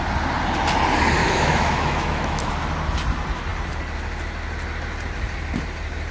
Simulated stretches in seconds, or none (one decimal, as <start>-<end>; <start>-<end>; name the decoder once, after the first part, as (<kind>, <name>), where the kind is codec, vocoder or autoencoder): 1.2-2.5 (autoencoder, DAC-VAE)